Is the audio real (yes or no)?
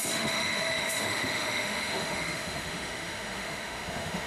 no